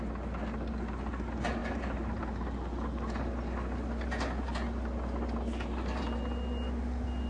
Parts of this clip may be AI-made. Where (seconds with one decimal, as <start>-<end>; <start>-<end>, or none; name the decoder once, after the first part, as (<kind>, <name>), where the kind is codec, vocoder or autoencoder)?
none

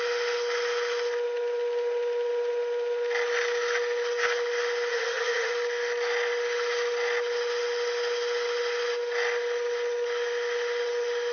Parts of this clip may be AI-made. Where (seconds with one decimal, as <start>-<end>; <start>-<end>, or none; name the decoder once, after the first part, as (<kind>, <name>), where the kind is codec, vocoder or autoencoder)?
4.9-5.5 (vocoder, HiFi-GAN)

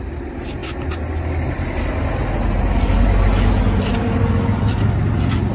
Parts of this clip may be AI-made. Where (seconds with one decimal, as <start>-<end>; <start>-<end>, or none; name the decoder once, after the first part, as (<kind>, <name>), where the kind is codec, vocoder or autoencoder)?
none

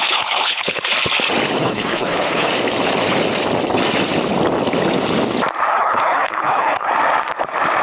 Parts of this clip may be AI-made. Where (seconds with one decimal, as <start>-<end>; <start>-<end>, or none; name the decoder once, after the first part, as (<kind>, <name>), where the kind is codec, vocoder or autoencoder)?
0.0-0.8 (codec, HILCodec); 1.6-2.5; 5.7-6.9

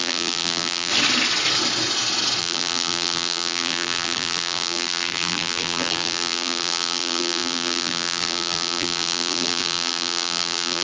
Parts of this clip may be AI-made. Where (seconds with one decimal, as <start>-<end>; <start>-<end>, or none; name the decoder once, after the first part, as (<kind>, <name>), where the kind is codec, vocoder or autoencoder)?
0.0-0.9 (vocoder, BigVGAN v2); 2.4-10.8

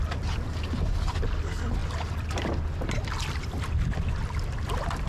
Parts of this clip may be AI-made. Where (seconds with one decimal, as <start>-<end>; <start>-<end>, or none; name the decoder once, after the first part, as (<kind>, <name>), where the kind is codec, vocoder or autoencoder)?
none

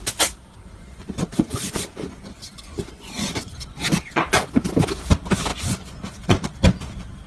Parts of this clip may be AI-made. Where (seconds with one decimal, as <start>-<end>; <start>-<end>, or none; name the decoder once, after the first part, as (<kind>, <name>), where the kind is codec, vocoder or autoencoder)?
0.6-4.6 (vocoder, Vocos); 5.5-7.3

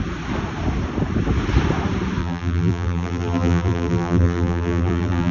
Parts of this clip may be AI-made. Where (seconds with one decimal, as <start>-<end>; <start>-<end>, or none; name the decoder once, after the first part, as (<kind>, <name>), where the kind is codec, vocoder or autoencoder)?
2.2-5.3 (vocoder, BigVGAN v2)